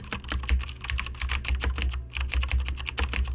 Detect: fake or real real